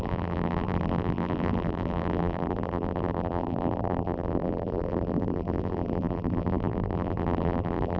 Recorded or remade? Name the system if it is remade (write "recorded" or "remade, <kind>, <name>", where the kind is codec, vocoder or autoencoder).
remade, vocoder, BigVGAN v2